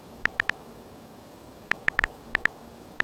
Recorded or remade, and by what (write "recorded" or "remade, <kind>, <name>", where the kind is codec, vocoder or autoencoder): remade, codec, DAC